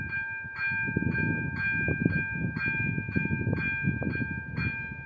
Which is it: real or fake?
real